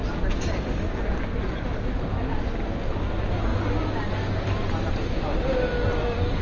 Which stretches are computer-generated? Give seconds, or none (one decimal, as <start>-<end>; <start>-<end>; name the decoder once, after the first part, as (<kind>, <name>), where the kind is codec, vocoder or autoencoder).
none